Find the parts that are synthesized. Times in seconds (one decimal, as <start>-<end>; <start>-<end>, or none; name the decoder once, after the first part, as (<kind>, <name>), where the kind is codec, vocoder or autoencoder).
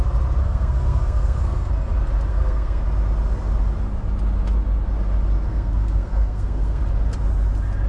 0.4-1.7 (codec, SNAC); 2.3-2.8; 5.5-6.8